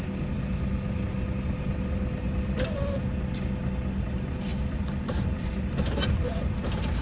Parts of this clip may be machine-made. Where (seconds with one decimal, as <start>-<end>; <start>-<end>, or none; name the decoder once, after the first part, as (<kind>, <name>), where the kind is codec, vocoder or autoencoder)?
4.5-5.5 (vocoder, BigVGAN v2)